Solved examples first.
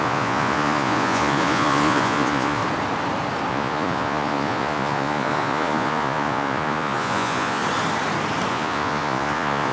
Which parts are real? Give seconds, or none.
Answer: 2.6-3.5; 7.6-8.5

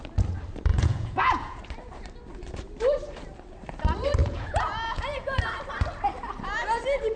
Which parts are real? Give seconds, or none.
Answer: 0.0-0.7; 1.6-4.2; 5.4-7.2

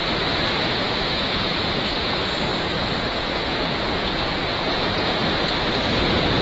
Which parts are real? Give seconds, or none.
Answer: 0.0-0.5; 5.2-5.9

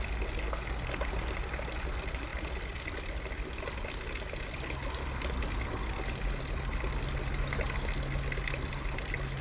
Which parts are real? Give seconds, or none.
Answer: 0.0-9.4

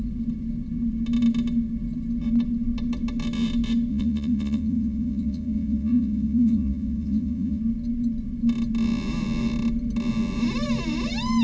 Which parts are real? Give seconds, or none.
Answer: 0.0-3.9; 7.6-11.4